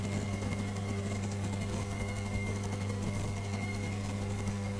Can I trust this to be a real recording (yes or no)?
no